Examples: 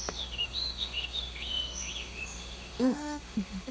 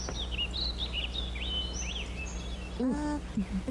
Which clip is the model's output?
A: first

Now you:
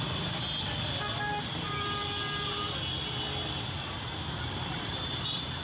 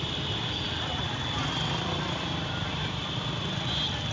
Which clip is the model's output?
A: second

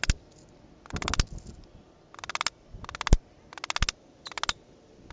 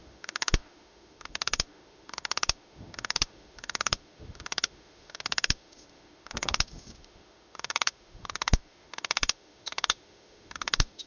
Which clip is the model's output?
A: second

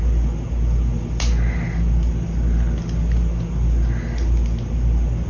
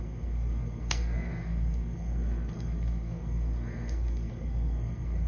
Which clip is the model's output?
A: second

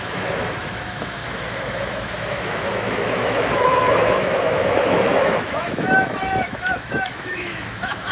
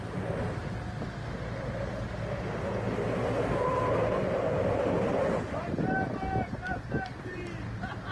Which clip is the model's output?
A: first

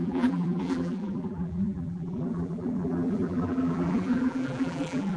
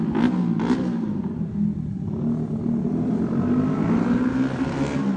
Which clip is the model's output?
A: first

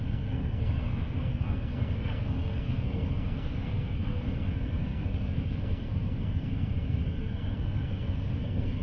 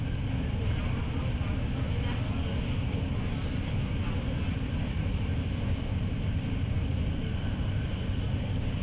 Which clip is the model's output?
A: first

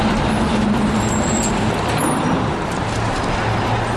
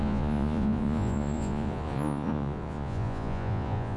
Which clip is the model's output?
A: second